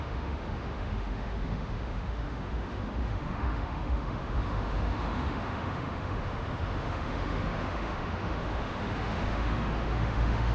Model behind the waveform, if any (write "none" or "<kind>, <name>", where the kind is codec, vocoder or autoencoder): autoencoder, DAC-VAE